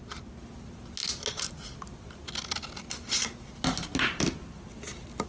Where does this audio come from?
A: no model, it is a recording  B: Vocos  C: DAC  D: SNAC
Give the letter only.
A